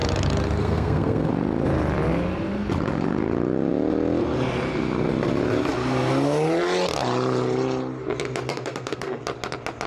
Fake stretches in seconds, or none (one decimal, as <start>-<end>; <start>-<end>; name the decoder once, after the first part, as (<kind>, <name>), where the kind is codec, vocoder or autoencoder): 0.6-1.3 (codec, SNAC); 8.5-9.2